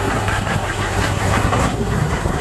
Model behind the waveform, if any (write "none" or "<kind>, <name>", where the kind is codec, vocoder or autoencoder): codec, SNAC